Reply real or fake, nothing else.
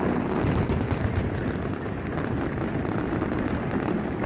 real